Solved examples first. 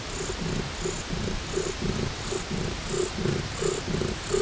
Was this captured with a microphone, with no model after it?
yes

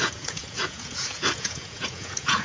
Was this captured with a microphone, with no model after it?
no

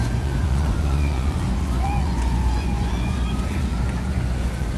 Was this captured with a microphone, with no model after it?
no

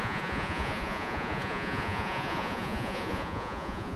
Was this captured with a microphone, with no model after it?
no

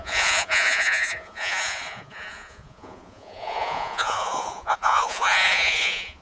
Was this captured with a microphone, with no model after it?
no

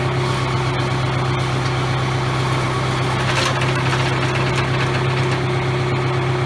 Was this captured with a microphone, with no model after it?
yes